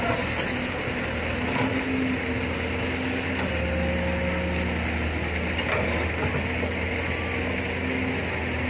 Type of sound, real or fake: real